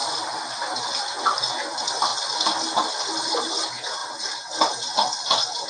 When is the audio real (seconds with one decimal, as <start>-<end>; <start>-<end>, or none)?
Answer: 0.0-4.0; 4.6-5.7